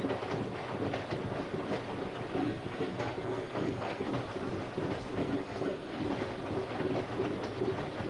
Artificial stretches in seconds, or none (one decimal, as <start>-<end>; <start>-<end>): 2.4-4.1; 5.2-6.0